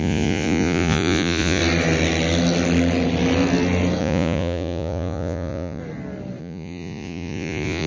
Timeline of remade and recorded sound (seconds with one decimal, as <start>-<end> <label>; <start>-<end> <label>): 0.0-1.6 remade; 1.6-4.0 recorded; 4.0-5.8 remade; 5.8-6.4 recorded; 6.4-7.9 remade